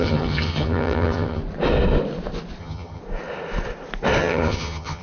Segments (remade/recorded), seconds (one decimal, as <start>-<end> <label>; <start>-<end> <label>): 0.0-1.4 remade; 1.4-2.6 recorded; 2.6-3.0 remade; 3.0-4.2 recorded; 4.2-5.0 remade